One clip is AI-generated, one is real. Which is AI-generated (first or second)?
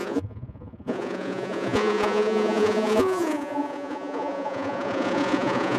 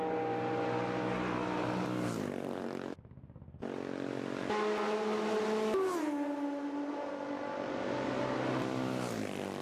first